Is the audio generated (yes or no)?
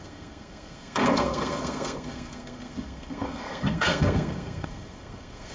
yes